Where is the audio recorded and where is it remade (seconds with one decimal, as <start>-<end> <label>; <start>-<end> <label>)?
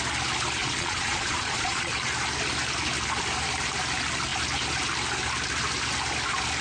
0.0-0.6 recorded; 0.6-1.9 remade; 1.9-6.6 recorded